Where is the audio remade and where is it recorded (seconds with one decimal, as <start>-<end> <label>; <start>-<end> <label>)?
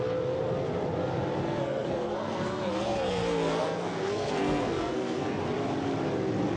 0.0-1.4 recorded; 1.4-5.4 remade; 5.4-6.6 recorded